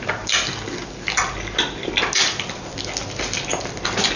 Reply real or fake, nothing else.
real